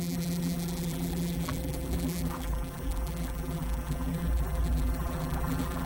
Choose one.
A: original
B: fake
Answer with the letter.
B